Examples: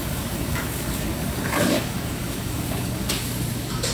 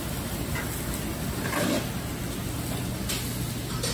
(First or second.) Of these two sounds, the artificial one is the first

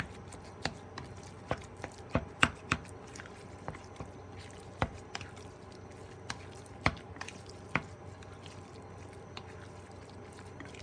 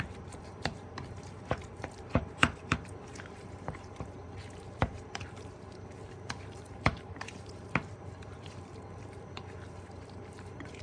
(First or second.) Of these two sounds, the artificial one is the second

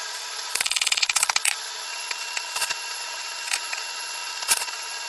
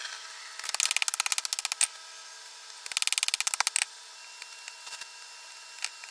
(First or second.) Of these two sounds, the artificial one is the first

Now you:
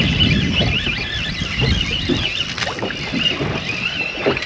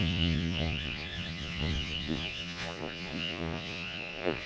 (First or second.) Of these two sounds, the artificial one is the second